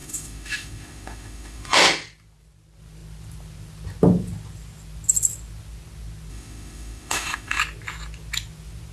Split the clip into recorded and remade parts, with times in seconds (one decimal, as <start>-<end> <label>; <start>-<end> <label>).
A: 0.0-1.8 remade; 1.8-6.3 recorded; 6.3-7.6 remade; 7.6-8.9 recorded